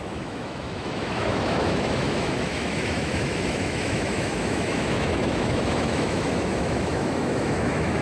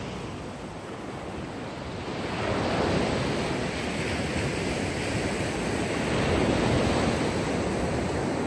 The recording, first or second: second